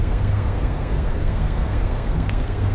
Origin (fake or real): fake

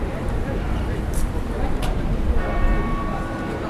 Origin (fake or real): fake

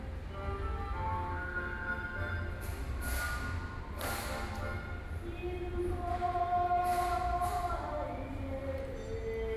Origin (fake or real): real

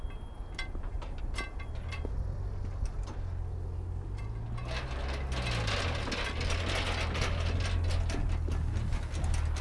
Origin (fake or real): real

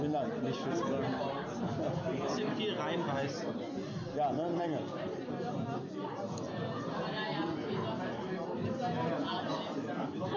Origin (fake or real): real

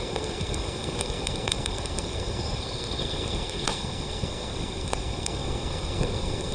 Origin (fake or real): fake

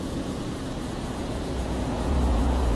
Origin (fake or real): fake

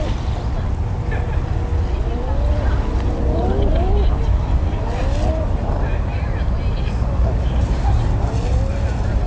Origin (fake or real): real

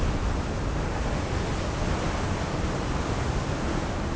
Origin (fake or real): real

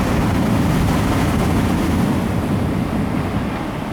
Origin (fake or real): real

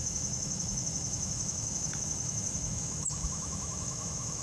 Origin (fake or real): fake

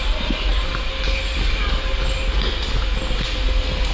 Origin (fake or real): real